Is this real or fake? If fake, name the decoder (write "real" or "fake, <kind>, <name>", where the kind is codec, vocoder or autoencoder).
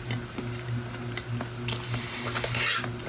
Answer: real